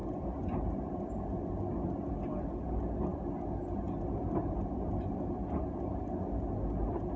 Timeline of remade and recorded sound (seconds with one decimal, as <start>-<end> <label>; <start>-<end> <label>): 0.0-7.2 recorded